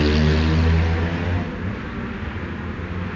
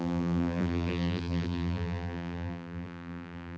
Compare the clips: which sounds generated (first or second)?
second